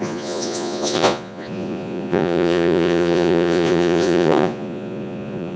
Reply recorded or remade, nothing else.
remade